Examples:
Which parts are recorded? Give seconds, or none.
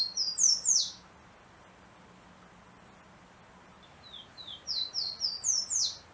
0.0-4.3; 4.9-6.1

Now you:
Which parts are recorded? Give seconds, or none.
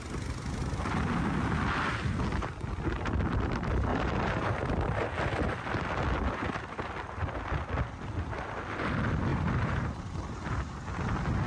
0.0-3.9; 4.5-9.3; 10.0-11.5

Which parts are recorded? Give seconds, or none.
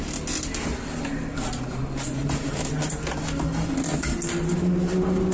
0.0-2.2; 2.7-5.3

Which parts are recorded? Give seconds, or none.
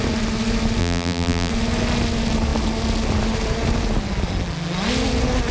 0.0-0.8; 1.5-5.5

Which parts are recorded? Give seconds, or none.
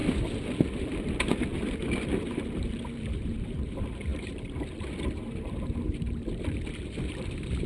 0.0-0.7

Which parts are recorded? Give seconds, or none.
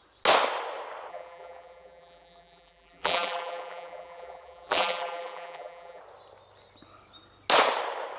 0.0-1.1; 6.0-8.2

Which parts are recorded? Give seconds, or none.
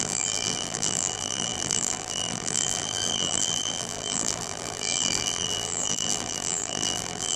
none